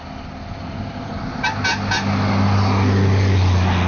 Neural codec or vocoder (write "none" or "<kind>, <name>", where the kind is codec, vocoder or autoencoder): none